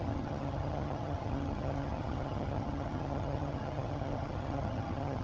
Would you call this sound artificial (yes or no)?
yes